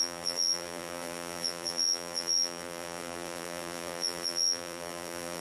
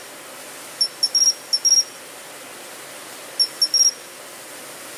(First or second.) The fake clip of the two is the first